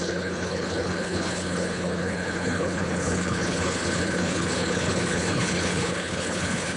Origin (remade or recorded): remade